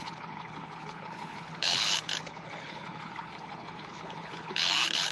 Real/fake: fake